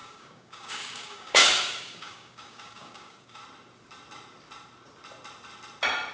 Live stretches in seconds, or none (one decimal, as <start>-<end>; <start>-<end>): 3.4-6.1